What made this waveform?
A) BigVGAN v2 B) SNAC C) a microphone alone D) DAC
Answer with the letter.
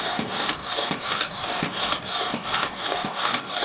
D